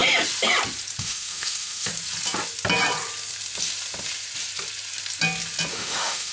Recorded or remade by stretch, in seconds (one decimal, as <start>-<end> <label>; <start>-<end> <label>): 0.0-1.0 recorded; 1.0-1.9 remade; 1.9-5.7 recorded; 5.7-6.3 remade